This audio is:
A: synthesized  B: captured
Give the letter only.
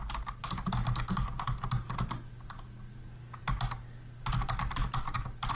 B